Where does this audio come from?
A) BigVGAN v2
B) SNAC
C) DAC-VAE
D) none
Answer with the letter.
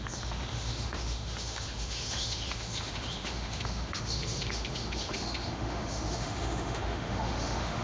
C